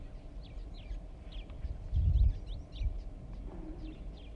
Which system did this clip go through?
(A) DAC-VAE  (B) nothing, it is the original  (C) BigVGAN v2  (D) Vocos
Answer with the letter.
B